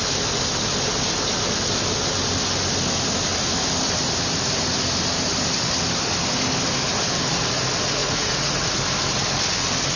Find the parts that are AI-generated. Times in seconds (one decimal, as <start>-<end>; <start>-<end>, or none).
8.0-8.6